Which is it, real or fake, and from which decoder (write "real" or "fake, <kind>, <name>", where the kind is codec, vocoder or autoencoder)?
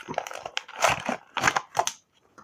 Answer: real